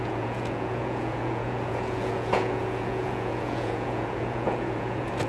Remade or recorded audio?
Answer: remade